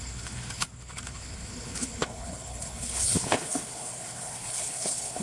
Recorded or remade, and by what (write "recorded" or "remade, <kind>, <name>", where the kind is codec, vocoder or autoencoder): remade, codec, HILCodec